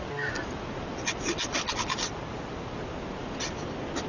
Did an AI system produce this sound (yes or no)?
no